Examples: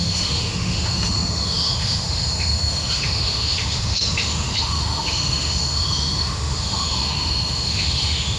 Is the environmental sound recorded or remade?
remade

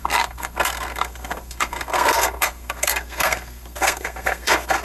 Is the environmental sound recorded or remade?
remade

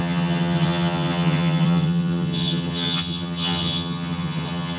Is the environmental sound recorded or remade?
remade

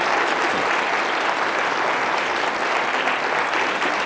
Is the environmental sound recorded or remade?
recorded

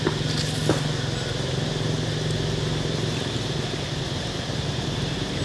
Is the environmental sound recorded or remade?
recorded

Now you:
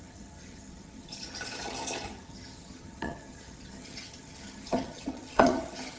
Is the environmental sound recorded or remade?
remade